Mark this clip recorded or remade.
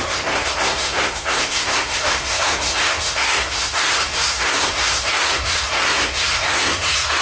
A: remade